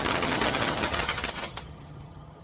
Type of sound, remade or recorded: remade